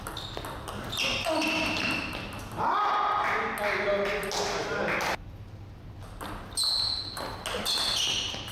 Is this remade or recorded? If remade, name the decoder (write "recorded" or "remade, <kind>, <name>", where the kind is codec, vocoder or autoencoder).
recorded